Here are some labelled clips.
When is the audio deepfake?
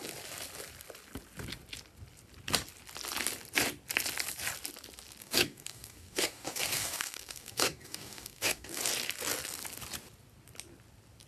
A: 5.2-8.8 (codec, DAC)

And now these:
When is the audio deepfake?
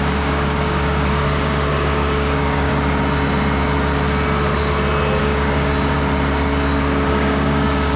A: 0.0-2.7 (codec, DAC); 5.2-5.7; 7.1-8.0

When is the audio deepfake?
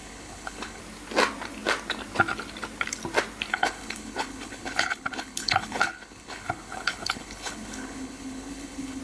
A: 0.0-0.8 (codec, HILCodec); 3.5-9.0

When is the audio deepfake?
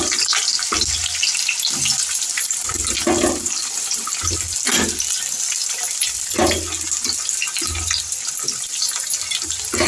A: none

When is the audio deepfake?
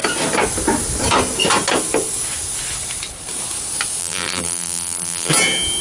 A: 4.0-5.3 (vocoder, BigVGAN v2)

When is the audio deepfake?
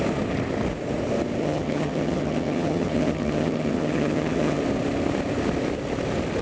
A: 1.4-4.6 (vocoder, HiFi-GAN)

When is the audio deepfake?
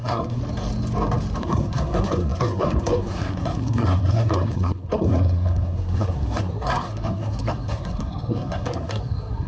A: 0.0-0.4 (codec, SNAC); 1.4-9.5